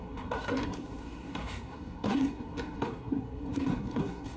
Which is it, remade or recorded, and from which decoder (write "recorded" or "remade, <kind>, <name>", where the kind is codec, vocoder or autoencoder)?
remade, codec, SNAC